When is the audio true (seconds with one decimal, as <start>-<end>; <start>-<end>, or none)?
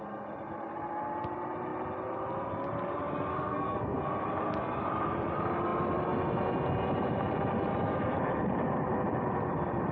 0.0-3.3; 4.0-9.9